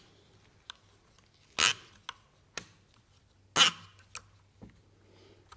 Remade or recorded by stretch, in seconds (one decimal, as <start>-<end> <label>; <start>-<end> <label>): 0.0-5.6 recorded